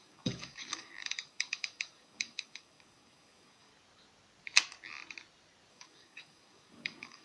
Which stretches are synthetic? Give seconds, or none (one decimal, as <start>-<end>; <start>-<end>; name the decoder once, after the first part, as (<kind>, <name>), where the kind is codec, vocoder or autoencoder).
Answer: 0.0-3.7 (codec, DAC); 5.7-7.2